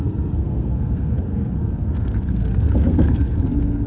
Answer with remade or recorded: remade